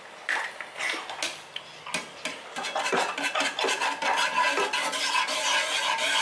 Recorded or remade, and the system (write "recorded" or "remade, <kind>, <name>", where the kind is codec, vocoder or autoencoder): recorded